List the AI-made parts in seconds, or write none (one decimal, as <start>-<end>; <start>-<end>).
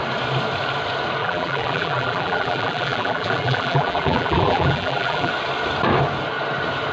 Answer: 1.2-5.3